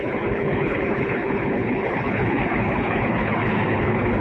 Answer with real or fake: fake